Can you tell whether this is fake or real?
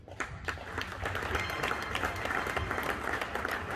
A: real